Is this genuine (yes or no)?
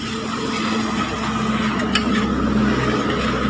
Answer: yes